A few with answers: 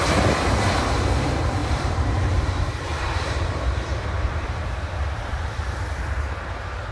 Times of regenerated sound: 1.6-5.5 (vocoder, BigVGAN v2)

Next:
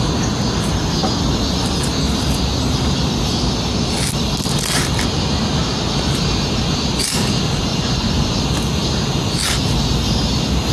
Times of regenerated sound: 7.7-8.4 (vocoder, Vocos)

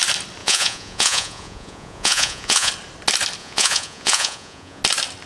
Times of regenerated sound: 0.4-2.7 (vocoder, Vocos); 3.4-4.8